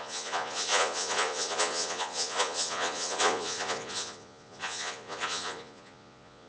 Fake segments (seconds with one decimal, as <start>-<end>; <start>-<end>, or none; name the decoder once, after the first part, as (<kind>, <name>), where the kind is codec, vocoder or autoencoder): 0.0-6.5 (vocoder, Vocos)